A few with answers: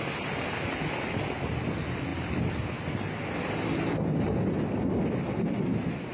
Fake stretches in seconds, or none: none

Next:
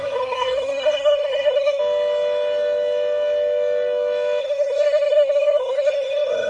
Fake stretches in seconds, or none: 0.0-1.8 (codec, SNAC); 4.4-6.5

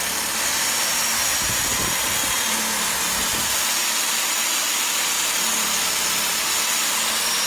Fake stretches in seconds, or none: 2.2-3.0 (vocoder, BigVGAN v2)

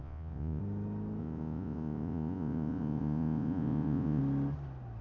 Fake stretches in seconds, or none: 0.0-0.6 (vocoder, Vocos); 1.2-4.2

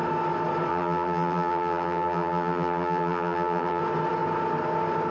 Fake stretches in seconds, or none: 0.7-3.8 (vocoder, BigVGAN v2)

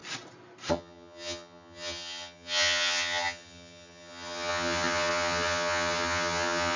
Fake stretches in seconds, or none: 0.7-6.8 (vocoder, HiFi-GAN)

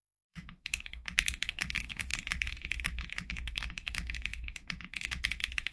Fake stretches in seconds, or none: 0.0-5.7 (autoencoder, DAC-VAE)

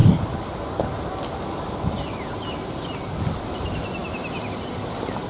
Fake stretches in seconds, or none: none